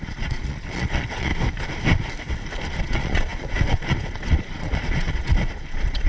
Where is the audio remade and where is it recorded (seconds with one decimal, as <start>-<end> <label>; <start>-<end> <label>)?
0.0-1.3 remade; 1.3-2.8 recorded; 2.8-6.1 remade